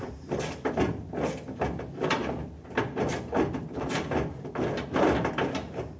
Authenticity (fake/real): real